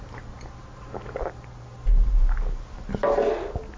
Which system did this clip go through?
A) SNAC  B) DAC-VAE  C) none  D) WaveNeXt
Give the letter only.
C